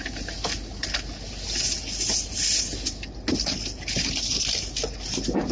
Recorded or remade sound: recorded